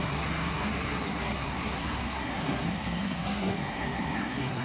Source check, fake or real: fake